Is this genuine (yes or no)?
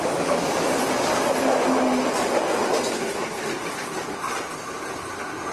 yes